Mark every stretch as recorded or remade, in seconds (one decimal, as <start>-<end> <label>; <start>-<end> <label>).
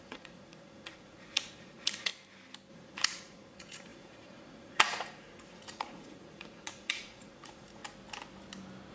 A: 0.0-2.1 remade; 2.1-2.7 recorded; 2.7-7.8 remade; 7.8-8.9 recorded